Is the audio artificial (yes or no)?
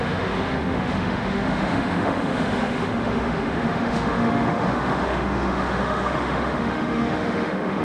yes